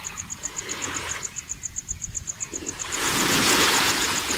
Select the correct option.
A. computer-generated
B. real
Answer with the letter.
A